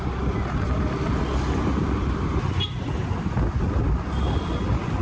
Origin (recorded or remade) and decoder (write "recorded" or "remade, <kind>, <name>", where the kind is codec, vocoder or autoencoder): recorded